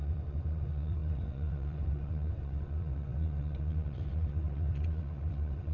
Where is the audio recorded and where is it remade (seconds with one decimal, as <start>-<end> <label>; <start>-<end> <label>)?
0.0-5.7 remade